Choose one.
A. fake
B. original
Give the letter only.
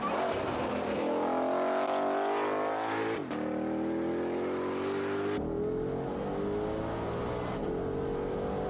B